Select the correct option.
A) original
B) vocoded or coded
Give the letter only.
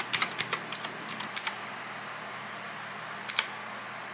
A